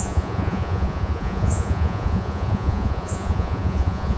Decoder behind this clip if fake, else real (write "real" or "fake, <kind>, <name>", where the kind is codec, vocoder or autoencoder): fake, vocoder, Vocos